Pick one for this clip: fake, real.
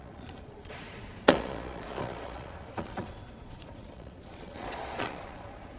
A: fake